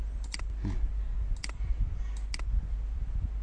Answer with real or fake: real